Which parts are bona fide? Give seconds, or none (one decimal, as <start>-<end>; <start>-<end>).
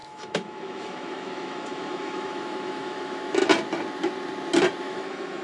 3.4-4.8